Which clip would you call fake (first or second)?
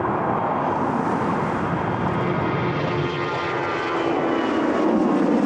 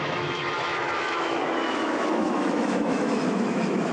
second